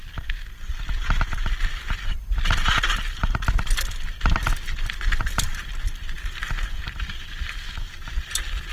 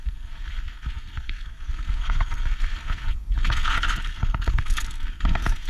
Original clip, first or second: first